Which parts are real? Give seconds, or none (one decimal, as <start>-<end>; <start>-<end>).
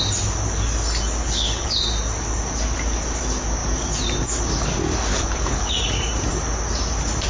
0.0-1.2; 1.8-5.1; 5.7-7.3